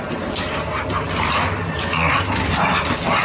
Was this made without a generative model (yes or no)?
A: yes